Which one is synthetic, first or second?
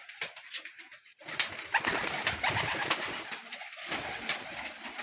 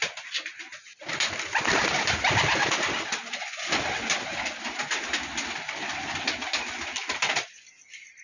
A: first